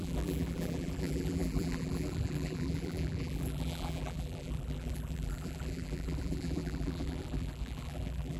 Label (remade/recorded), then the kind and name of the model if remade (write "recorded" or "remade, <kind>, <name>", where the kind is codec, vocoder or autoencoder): remade, vocoder, BigVGAN v2